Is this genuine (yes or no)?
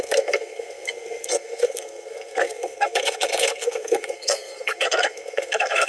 no